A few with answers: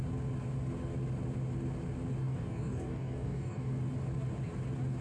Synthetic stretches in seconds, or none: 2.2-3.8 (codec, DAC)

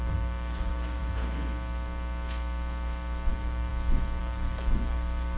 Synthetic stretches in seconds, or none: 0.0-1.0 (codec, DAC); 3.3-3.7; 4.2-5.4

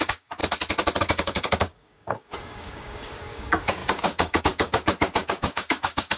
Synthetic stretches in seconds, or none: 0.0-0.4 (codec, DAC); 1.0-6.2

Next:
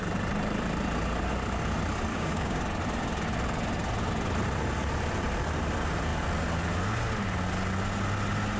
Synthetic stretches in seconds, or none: 2.1-2.6 (codec, DAC)

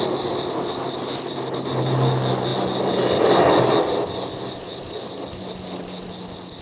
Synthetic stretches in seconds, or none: none

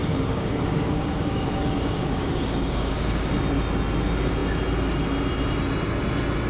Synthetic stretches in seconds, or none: 0.0-3.3 (codec, DAC)

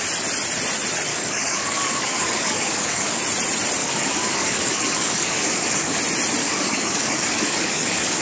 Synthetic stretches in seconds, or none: 1.1-3.2 (codec, DAC); 3.8-6.0; 6.4-8.2